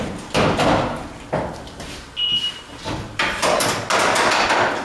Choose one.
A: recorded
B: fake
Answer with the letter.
A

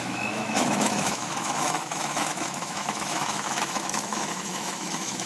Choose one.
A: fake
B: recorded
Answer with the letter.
A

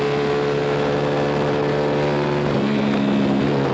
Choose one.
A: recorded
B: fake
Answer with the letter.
A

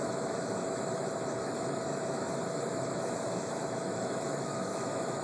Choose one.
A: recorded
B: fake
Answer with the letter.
B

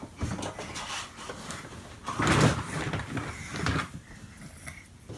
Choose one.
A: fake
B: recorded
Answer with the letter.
B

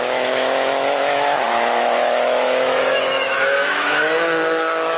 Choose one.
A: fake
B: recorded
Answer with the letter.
A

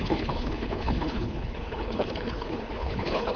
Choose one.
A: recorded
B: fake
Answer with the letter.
B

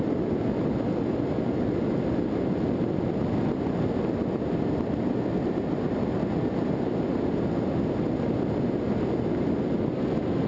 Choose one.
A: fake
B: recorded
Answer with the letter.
B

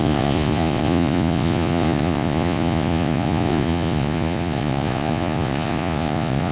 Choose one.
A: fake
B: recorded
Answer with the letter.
A